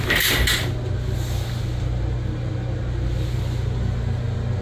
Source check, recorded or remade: recorded